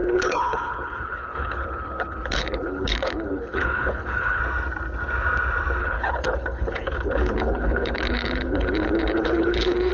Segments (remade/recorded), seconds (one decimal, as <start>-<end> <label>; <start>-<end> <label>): 0.0-4.4 remade; 4.4-5.8 recorded; 5.8-9.9 remade

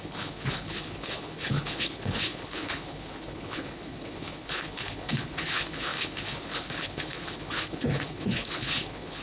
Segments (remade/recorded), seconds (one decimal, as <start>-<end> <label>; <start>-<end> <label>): 0.0-9.2 remade

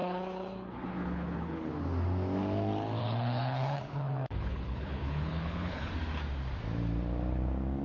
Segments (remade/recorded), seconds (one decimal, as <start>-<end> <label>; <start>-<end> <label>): 0.0-1.7 remade; 1.7-3.0 recorded; 3.0-5.9 remade; 5.9-7.8 recorded

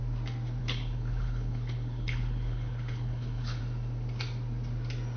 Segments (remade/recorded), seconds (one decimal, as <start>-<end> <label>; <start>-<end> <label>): 0.0-0.6 recorded; 0.6-3.6 remade; 3.6-5.2 recorded

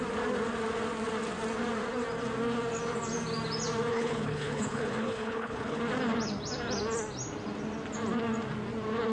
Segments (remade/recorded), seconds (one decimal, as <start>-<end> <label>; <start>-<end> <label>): 0.0-3.9 recorded; 3.9-5.8 remade; 5.8-9.1 recorded

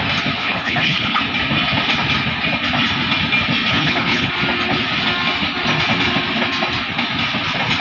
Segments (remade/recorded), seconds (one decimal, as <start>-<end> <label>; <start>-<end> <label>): 0.0-0.4 recorded; 0.4-1.2 remade; 1.2-3.7 recorded; 3.7-4.3 remade; 4.3-7.8 recorded

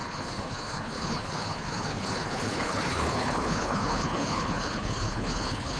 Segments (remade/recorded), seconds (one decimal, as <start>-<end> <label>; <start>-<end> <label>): 0.0-5.8 remade